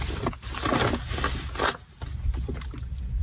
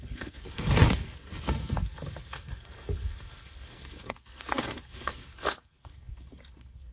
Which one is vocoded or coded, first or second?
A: second